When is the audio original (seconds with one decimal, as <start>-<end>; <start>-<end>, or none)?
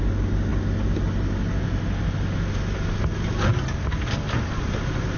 0.0-5.2